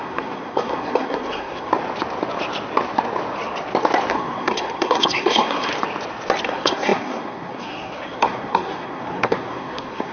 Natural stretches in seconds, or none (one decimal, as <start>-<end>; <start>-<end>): 1.7-4.1; 5.7-6.4